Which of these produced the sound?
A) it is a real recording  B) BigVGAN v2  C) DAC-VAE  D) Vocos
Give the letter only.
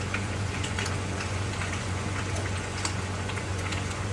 D